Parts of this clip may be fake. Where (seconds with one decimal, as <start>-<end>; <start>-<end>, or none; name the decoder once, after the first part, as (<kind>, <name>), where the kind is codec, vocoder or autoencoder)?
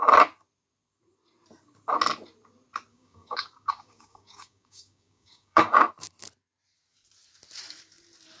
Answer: 2.9-5.9 (codec, DAC)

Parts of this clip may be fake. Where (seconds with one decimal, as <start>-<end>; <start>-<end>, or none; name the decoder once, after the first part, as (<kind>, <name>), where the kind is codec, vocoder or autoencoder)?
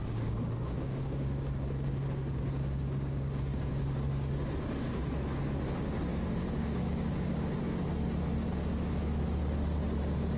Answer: 0.0-4.3 (codec, DAC); 6.1-7.5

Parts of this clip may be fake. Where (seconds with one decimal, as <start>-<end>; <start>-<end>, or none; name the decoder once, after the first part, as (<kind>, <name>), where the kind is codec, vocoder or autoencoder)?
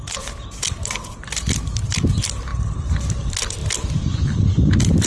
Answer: none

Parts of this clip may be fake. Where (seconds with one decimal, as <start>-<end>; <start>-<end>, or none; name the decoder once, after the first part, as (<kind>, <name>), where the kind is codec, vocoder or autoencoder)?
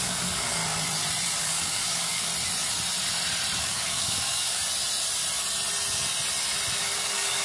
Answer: 0.0-0.6 (codec, DAC); 1.4-2.3; 3.6-4.6; 6.8-7.4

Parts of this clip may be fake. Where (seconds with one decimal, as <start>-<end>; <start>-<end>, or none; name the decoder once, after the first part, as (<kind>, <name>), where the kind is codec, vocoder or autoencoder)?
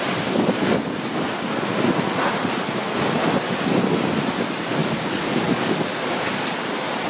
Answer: 4.8-6.5 (codec, DAC)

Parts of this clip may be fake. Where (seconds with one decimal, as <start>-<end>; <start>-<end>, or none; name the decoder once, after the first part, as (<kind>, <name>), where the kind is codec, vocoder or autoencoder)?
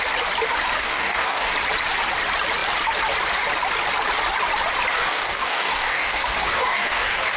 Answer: 0.8-1.5 (codec, DAC); 4.9-7.4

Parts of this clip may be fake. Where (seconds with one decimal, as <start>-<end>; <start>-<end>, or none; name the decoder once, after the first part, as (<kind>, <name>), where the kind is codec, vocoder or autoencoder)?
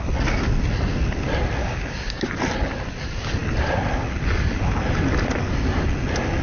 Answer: 1.6-2.3 (codec, DAC)